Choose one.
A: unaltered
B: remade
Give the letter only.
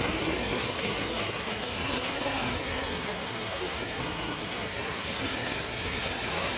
B